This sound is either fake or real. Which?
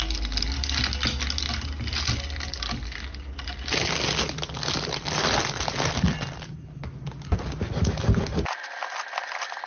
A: real